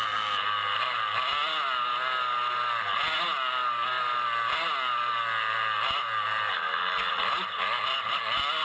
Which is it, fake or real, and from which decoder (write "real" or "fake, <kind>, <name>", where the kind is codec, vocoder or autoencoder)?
real